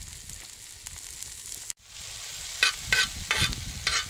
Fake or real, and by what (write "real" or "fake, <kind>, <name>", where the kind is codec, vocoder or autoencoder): real